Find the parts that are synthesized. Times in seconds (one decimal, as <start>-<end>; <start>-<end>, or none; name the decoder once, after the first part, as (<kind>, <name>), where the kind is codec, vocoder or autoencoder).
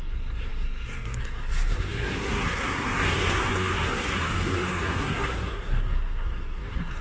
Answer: 0.0-7.0 (codec, SNAC)